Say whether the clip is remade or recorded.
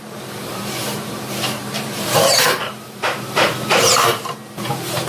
remade